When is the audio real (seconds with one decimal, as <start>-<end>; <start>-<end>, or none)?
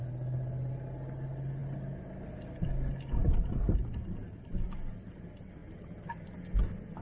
0.0-7.0